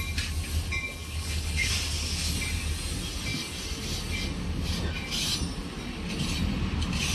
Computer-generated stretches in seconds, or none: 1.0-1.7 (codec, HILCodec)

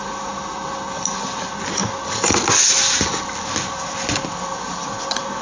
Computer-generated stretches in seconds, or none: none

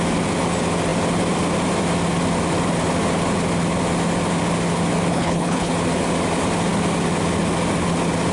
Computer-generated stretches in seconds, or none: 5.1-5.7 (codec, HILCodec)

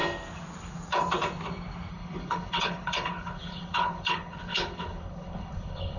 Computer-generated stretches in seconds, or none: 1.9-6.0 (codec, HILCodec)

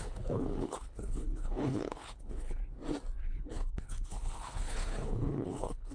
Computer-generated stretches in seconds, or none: 0.0-2.6 (codec, HILCodec); 3.2-5.9

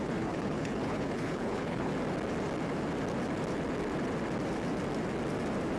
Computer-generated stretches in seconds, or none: 0.0-1.9 (codec, HILCodec)

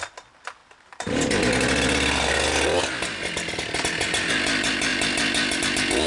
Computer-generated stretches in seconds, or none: none

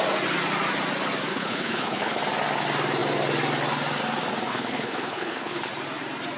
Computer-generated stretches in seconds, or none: 1.3-2.2 (codec, HILCodec); 4.5-5.7